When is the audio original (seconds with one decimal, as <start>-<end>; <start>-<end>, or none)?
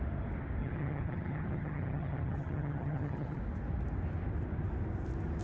0.0-0.6; 3.4-5.4